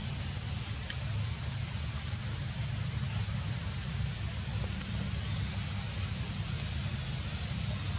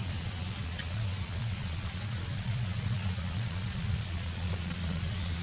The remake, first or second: second